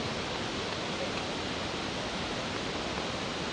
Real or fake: real